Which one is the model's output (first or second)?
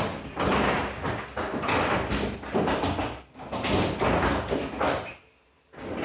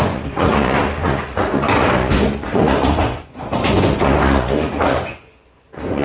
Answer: second